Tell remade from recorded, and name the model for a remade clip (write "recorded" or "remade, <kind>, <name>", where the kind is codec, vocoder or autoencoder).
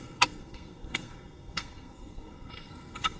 remade, codec, SNAC